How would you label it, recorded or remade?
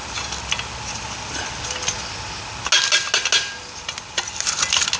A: recorded